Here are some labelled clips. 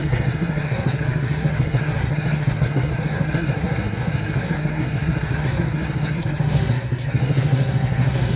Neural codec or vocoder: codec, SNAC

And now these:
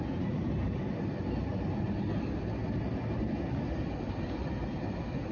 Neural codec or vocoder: none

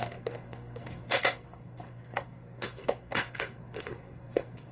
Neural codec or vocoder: codec, SNAC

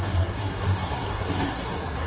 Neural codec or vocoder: codec, SNAC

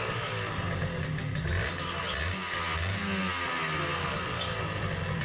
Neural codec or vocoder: none